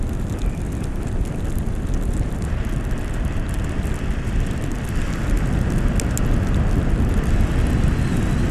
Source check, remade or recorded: recorded